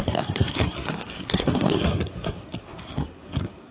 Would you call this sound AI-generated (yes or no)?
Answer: yes